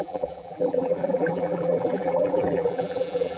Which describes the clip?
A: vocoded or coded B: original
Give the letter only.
A